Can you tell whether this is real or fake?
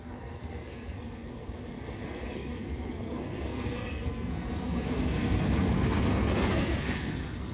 fake